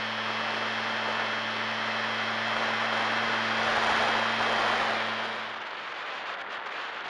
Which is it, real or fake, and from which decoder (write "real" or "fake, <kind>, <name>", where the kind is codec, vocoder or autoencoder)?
real